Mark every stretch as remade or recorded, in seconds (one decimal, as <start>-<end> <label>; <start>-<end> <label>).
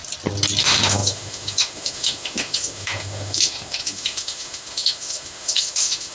0.0-0.6 recorded; 0.6-6.1 remade